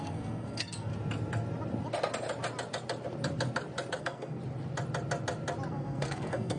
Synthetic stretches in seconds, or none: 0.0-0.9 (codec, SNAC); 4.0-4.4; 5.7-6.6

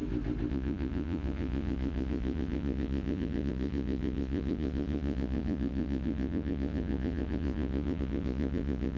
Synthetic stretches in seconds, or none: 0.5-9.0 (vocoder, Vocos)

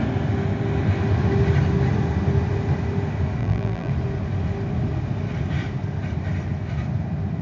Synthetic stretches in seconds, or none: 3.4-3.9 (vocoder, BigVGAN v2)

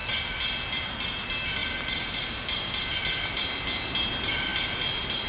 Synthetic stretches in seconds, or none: none

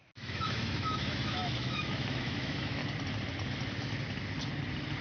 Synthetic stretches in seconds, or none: 0.0-2.8 (autoencoder, DAC-VAE)

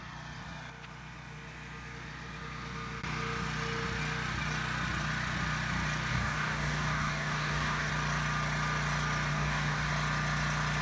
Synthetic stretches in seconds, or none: 6.1-7.9 (codec, DAC); 9.3-9.9